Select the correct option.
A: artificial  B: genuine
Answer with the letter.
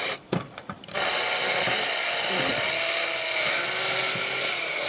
B